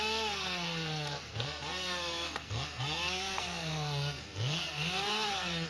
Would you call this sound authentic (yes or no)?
no